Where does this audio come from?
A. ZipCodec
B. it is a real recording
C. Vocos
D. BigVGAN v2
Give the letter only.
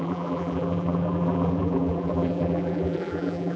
D